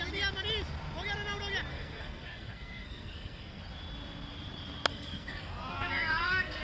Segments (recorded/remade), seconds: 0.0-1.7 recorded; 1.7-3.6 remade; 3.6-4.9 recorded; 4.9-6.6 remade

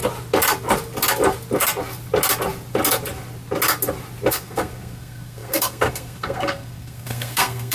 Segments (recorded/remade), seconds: 0.0-4.3 recorded; 4.3-7.7 remade

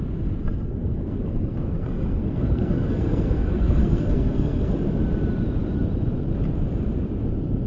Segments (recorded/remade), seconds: 0.0-0.8 recorded; 0.8-4.7 remade; 4.7-7.7 recorded

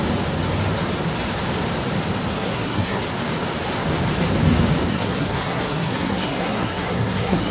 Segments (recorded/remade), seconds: 0.0-2.3 recorded; 2.3-3.0 remade; 3.0-4.9 recorded; 4.9-7.5 remade

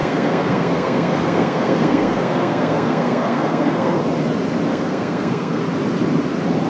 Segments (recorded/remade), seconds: 0.0-4.0 remade; 4.0-4.7 recorded; 4.7-5.6 remade; 5.6-6.7 recorded

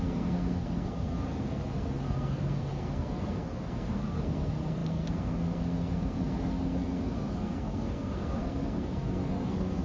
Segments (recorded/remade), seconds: 0.0-9.8 remade